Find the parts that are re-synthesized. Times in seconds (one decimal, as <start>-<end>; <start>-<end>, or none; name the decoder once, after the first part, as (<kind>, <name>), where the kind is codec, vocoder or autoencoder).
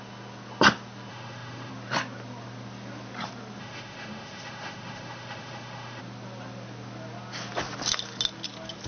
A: 1.1-1.7 (autoencoder, DAC-VAE); 3.6-6.0